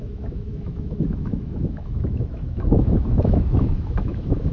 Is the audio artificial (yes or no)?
yes